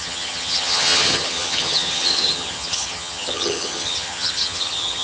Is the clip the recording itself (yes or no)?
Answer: no